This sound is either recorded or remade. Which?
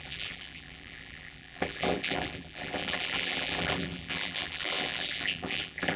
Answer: remade